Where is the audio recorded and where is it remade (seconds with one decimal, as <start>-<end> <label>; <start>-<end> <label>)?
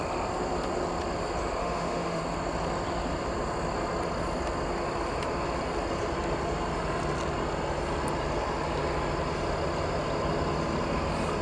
0.0-1.6 recorded; 1.6-2.2 remade; 2.2-11.4 recorded